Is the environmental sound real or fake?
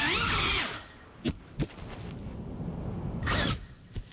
real